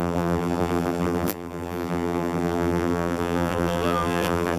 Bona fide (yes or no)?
no